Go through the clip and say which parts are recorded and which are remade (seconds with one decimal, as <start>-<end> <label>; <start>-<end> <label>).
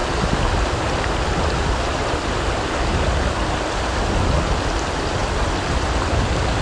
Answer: 0.0-6.6 recorded